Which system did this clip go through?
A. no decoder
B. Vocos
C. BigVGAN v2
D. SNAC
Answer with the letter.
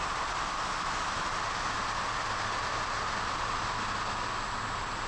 A